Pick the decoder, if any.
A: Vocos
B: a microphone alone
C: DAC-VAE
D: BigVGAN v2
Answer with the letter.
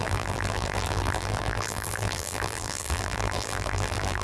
D